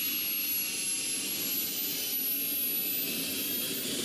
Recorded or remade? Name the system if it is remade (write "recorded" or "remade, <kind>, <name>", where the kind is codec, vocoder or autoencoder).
recorded